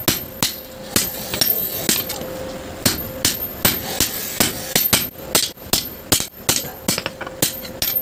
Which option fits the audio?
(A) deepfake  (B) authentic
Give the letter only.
B